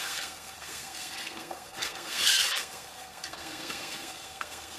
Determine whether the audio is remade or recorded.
remade